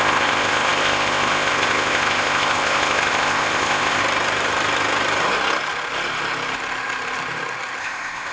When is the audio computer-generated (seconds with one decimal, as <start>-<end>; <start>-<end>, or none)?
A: 0.0-4.0; 7.8-8.3